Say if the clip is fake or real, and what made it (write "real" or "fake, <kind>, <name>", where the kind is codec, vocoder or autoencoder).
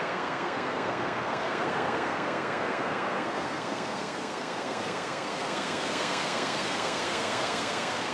fake, codec, SNAC